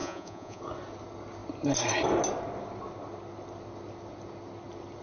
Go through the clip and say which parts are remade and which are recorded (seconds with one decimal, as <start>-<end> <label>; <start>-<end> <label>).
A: 0.0-0.6 remade; 0.6-5.0 recorded